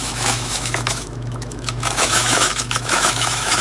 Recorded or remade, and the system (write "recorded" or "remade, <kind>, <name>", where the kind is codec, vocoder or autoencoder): remade, autoencoder, DAC-VAE